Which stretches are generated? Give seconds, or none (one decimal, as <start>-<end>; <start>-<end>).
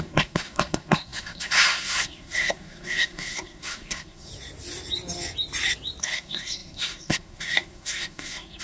0.0-4.3; 6.0-8.6